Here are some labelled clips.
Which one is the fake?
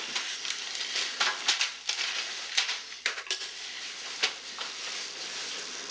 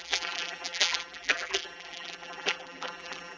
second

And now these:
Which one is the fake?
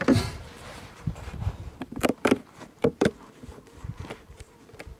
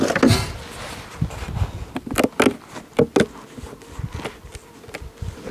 first